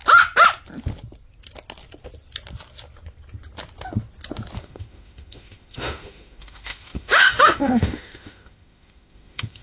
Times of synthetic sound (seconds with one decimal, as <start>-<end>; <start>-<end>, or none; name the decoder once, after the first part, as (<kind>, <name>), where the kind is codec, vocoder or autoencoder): 4.6-9.6 (autoencoder, DAC-VAE)